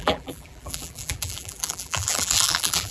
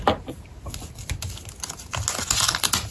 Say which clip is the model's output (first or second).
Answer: first